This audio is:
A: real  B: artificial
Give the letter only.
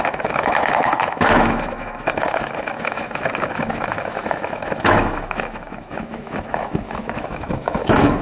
B